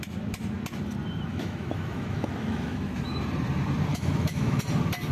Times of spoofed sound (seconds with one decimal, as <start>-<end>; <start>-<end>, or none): 1.3-3.2; 3.9-4.6